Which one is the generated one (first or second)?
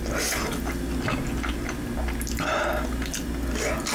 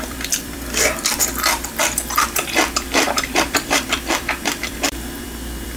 second